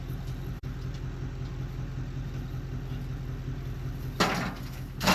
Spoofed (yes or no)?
no